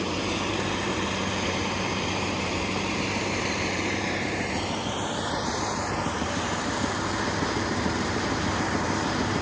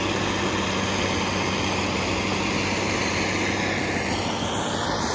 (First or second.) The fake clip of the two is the first